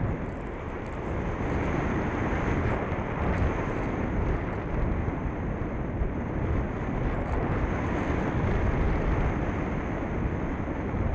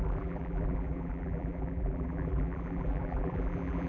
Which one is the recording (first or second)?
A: first